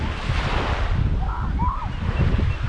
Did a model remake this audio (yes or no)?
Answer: no